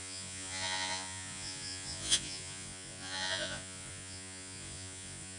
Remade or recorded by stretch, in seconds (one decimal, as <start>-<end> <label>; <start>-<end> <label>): 0.0-5.4 remade